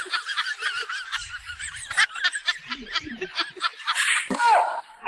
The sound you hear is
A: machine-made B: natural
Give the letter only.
A